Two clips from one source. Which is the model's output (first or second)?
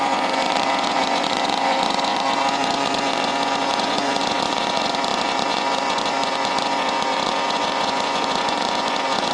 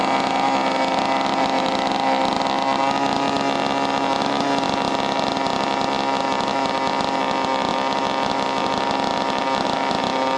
first